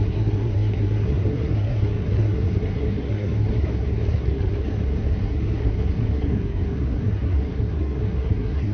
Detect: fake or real fake